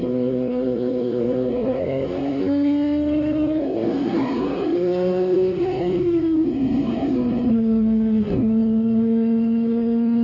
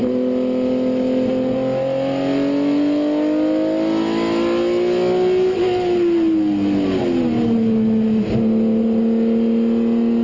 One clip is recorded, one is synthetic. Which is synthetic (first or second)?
first